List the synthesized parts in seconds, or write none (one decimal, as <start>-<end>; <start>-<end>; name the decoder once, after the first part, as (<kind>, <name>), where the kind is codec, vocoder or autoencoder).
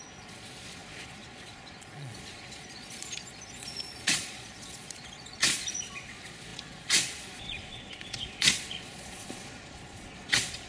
0.0-10.7 (vocoder, Vocos)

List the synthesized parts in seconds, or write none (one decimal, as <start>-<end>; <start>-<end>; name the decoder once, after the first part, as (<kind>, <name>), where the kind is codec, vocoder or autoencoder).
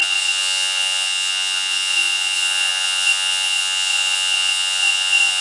0.0-5.4 (vocoder, Vocos)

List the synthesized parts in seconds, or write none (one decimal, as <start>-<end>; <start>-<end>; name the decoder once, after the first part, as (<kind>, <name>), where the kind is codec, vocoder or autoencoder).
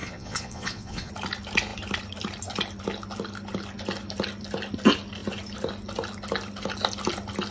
0.0-1.1 (vocoder, Vocos)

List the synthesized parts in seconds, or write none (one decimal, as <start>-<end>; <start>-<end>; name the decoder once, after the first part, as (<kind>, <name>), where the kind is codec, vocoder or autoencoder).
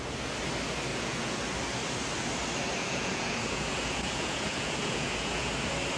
0.9-1.4 (vocoder, Vocos); 2.8-5.5